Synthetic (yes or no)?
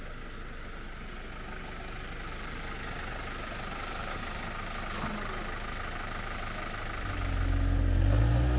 no